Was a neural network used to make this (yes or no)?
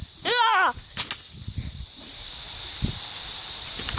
no